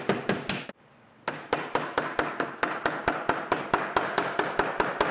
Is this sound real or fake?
real